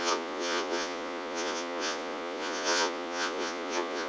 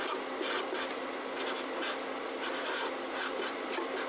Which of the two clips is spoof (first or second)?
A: first